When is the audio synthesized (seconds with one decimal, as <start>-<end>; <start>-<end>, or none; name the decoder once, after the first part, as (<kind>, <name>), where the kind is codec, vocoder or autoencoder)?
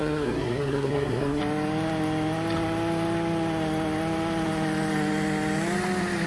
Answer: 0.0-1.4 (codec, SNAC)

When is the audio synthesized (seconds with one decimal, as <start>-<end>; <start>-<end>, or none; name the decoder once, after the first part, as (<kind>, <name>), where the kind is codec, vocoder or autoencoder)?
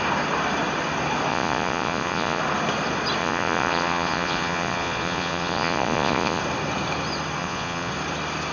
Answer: 1.3-2.4 (vocoder, Vocos); 3.2-6.4; 7.4-7.9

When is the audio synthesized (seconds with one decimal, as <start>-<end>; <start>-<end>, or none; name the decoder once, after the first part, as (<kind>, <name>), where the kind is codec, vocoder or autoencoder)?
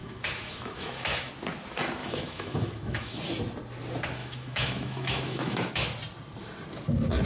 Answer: 0.0-1.3 (autoencoder, DAC-VAE); 2.0-3.2; 4.2-5.7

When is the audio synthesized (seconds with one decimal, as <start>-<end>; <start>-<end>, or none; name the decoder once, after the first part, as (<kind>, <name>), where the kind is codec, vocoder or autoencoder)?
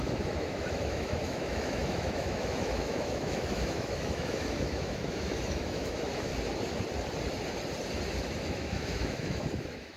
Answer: 0.0-6.3 (autoencoder, DAC-VAE); 8.4-10.0